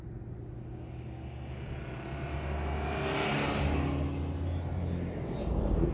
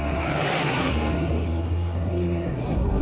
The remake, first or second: second